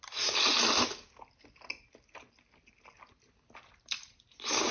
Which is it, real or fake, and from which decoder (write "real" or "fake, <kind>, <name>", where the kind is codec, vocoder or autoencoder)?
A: real